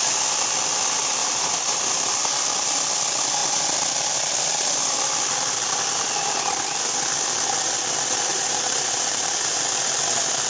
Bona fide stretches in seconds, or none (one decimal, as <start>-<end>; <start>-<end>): 0.0-1.2; 2.3-8.3; 9.6-10.5